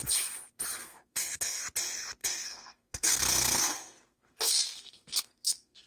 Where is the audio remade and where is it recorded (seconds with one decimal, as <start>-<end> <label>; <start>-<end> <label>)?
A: 0.0-0.8 recorded; 0.8-1.6 remade; 1.6-2.2 recorded; 2.2-5.9 remade